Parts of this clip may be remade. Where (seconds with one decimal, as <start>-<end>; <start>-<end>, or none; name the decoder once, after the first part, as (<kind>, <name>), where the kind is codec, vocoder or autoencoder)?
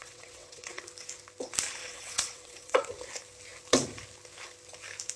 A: 0.0-0.8 (vocoder, WaveNeXt); 1.8-2.9